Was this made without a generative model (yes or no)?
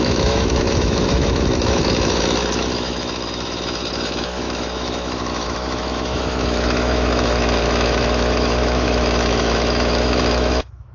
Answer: no